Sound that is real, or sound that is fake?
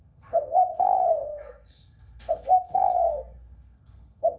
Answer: fake